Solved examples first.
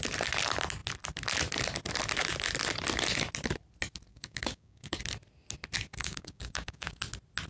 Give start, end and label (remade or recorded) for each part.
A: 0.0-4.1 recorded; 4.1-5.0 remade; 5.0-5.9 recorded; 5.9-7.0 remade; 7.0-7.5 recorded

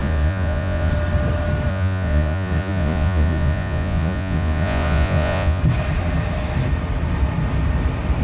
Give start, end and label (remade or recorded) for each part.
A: 0.0-0.9 remade; 0.9-1.7 recorded; 1.7-5.6 remade; 5.6-8.2 recorded

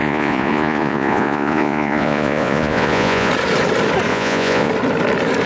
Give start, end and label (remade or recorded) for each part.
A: 0.0-3.3 remade; 3.3-4.1 recorded; 4.1-4.7 remade; 4.7-5.5 recorded

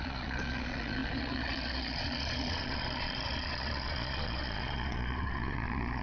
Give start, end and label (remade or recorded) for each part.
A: 0.0-6.0 remade